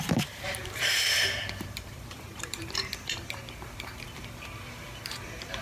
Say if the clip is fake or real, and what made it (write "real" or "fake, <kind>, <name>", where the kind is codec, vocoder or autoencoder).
fake, vocoder, BigVGAN v2